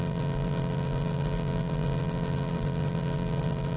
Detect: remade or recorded remade